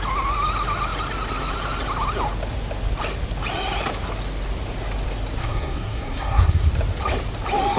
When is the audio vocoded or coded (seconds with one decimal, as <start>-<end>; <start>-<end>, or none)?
5.4-6.7